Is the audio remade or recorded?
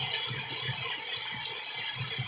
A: recorded